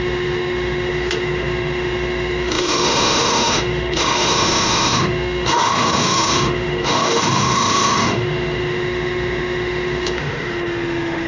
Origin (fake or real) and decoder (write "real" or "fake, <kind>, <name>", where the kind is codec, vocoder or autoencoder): fake, autoencoder, DAC-VAE